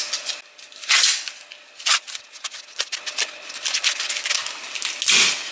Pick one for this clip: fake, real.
real